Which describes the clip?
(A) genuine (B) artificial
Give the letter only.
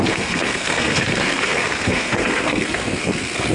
B